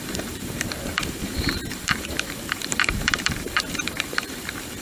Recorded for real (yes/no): no